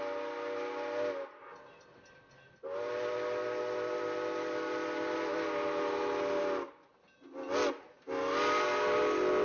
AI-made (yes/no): no